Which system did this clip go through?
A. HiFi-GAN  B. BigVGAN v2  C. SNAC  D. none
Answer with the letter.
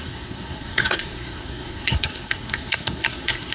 C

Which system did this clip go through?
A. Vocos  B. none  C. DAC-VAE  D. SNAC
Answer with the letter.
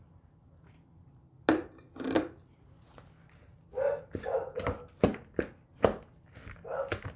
B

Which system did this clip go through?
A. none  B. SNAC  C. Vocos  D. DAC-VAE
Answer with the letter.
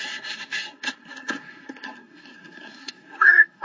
B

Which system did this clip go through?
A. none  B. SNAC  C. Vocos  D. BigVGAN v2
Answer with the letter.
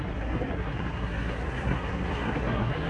B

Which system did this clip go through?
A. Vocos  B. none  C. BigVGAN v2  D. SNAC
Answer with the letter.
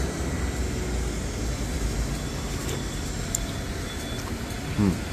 B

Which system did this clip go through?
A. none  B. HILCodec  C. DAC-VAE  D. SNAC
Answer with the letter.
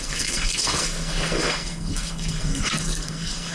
D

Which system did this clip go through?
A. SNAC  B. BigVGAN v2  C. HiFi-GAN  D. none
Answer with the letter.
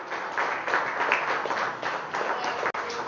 D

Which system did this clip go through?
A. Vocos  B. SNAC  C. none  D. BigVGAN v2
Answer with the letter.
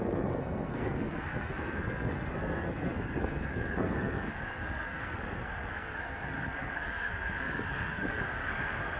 B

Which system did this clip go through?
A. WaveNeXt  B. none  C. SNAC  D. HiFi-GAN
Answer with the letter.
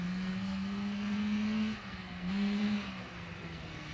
C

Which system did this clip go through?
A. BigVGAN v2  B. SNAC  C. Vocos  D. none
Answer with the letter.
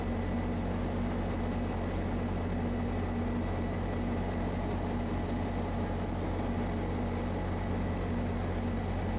D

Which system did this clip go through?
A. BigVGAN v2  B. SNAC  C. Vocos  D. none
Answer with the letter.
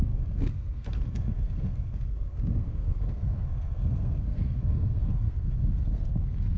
B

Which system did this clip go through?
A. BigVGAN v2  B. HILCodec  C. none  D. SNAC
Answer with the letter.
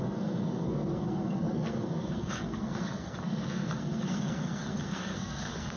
D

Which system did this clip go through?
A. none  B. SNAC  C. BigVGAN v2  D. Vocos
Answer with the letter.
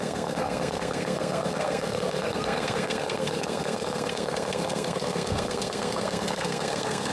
B